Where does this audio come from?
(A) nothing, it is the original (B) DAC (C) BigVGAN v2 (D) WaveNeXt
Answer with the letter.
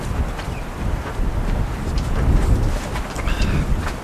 C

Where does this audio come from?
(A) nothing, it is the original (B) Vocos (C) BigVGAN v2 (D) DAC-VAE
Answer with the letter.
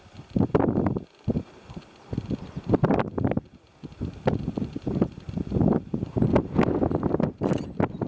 C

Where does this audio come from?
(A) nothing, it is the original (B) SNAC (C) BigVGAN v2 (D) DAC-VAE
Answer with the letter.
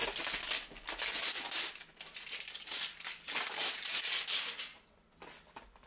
A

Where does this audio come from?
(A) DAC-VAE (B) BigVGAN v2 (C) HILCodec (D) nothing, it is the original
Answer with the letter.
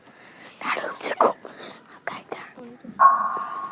D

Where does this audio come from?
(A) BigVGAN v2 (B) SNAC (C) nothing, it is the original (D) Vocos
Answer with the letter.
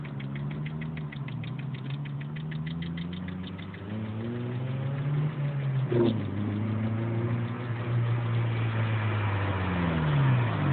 C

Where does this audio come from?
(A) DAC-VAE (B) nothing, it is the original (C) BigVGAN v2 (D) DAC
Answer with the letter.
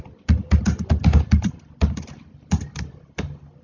B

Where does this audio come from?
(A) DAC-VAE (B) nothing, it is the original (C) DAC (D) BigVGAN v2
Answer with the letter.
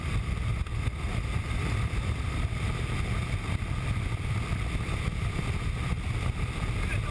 D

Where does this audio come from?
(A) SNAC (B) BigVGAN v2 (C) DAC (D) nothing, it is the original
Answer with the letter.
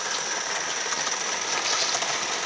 D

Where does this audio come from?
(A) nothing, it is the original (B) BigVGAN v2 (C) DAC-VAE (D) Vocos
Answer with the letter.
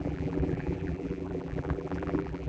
B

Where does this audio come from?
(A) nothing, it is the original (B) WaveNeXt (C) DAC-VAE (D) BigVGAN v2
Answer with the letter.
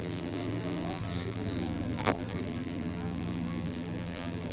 D